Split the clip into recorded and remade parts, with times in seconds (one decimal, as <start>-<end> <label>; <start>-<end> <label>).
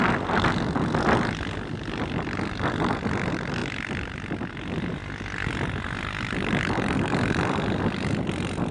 0.0-8.7 recorded